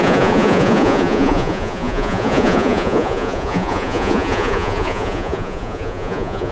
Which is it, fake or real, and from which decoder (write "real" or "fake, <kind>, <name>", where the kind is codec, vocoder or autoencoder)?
fake, vocoder, Vocos